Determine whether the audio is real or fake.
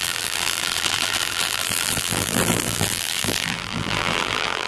fake